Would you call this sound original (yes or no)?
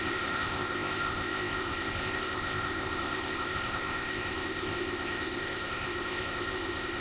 no